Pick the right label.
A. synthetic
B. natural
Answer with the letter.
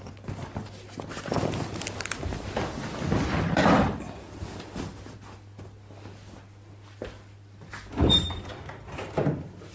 B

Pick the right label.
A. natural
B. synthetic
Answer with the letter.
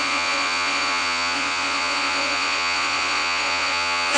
B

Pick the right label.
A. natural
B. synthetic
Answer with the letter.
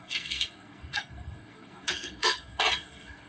B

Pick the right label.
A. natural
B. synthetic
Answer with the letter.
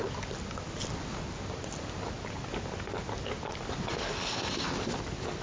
A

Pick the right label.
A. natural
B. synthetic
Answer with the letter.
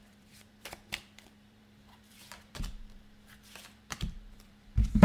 B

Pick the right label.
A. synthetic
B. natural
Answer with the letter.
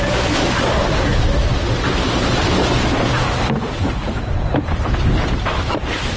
B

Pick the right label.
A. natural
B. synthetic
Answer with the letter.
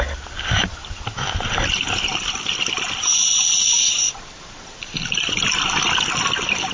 A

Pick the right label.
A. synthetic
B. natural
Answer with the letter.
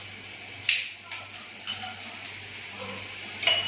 B